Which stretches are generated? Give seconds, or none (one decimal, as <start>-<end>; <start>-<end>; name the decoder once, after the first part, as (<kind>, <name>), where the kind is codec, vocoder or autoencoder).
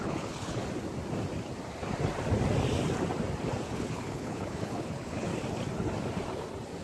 0.0-0.6 (codec, HILCodec); 3.7-5.3